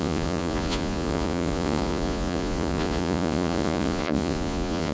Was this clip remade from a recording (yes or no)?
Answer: yes